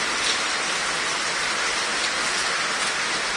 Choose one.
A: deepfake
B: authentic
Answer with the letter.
B